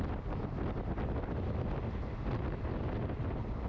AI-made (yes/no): no